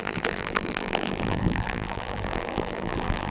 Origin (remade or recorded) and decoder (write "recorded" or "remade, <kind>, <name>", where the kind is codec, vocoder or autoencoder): remade, vocoder, BigVGAN v2